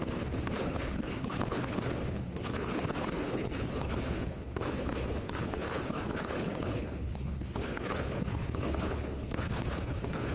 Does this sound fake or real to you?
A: fake